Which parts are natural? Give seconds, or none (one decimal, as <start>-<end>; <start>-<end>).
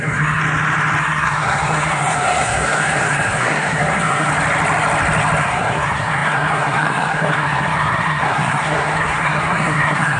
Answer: 0.4-1.0; 4.3-5.4